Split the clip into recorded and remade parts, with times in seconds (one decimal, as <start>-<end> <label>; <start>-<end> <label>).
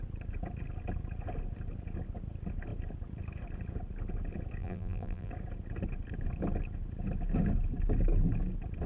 0.0-4.6 recorded; 4.6-5.3 remade; 5.3-8.9 recorded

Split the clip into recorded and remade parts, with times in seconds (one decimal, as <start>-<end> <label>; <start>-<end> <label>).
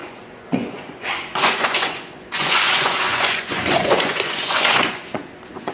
0.0-5.7 remade